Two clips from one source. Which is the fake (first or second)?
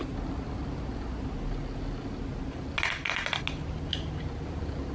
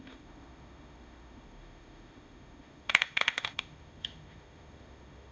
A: second